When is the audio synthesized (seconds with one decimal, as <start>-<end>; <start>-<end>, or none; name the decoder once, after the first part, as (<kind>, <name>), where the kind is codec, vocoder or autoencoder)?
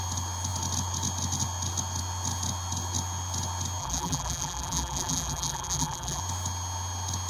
3.8-6.2 (vocoder, BigVGAN v2)